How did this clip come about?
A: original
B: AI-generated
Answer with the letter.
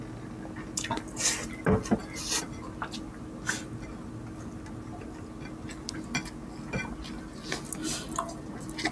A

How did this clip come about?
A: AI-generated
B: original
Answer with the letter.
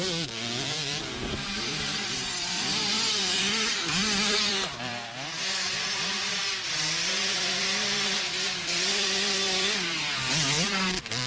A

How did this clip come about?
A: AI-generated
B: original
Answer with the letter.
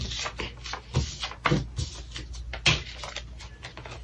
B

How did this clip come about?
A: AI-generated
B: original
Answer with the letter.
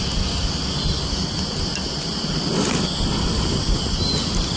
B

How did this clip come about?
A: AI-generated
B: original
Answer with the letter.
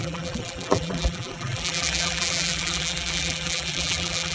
A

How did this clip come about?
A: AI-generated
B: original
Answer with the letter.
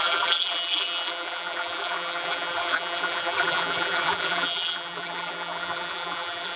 A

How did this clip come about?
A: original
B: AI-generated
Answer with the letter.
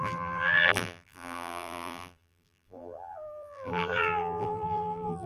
B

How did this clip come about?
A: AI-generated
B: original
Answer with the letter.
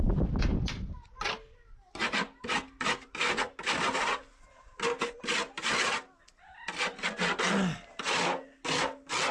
B